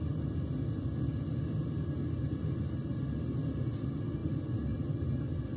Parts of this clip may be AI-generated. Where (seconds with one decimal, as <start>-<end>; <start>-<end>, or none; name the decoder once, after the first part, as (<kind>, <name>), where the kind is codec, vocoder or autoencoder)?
none